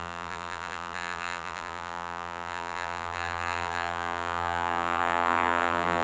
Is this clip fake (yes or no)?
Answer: yes